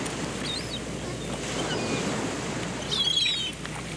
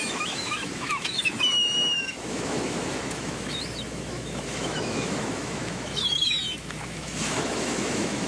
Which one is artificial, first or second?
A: second